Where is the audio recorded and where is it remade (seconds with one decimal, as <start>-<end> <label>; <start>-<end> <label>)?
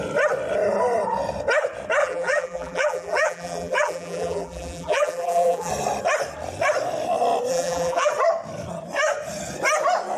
0.0-2.0 recorded; 2.0-5.7 remade; 5.7-7.5 recorded; 7.5-8.1 remade; 8.1-10.2 recorded